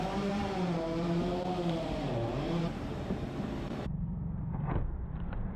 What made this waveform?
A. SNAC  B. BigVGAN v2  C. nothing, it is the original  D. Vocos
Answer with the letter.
B